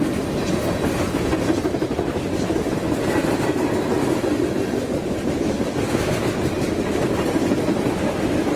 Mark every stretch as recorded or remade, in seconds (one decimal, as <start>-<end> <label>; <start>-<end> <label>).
0.0-8.6 recorded